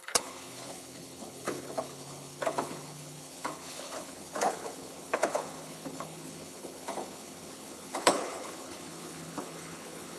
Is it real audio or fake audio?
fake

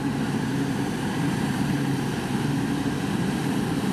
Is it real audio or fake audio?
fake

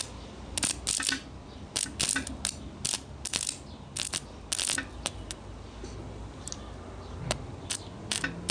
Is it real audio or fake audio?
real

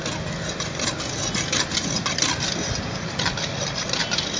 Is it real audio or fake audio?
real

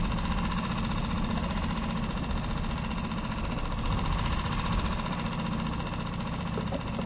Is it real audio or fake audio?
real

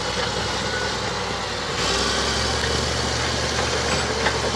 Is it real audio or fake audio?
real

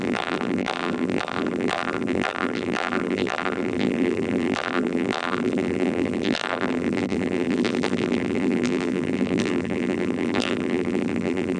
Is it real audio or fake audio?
fake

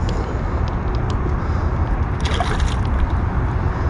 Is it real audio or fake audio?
real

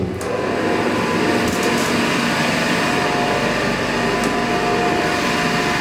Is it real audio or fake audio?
real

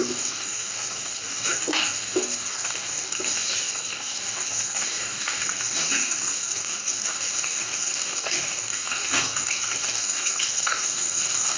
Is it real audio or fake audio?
fake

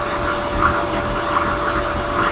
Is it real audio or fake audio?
real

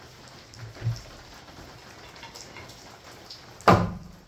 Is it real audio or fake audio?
real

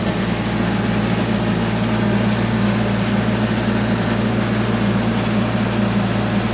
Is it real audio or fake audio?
real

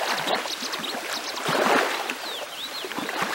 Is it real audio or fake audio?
real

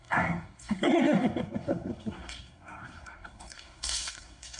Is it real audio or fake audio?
fake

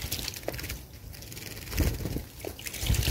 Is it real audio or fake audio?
real